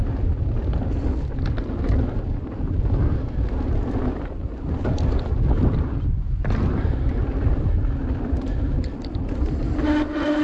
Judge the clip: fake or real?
real